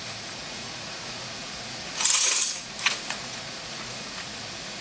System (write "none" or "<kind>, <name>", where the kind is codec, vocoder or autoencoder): vocoder, Vocos